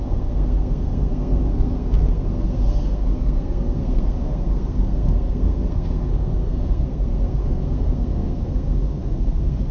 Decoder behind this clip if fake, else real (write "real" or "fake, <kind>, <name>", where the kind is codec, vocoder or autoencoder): fake, codec, SNAC